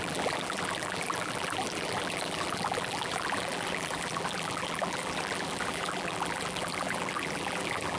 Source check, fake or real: fake